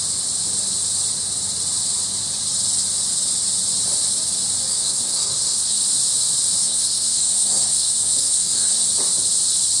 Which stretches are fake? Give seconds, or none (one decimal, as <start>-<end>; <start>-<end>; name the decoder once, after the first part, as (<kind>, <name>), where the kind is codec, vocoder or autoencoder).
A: 4.7-5.8 (codec, SNAC); 6.6-8.9